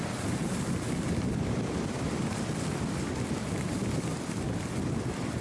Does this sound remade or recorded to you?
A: recorded